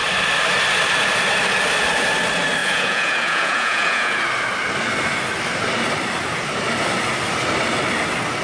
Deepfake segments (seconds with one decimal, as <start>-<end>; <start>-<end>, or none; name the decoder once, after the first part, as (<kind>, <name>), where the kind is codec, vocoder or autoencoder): 2.6-4.2 (vocoder, Vocos)